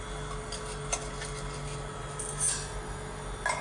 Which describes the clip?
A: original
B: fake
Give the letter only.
A